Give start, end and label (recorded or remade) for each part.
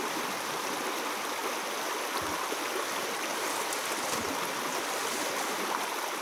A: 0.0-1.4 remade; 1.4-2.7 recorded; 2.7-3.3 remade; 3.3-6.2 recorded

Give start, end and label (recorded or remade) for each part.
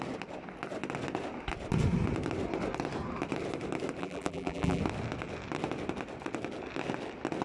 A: 0.0-4.0 recorded; 4.0-4.8 remade; 4.8-7.4 recorded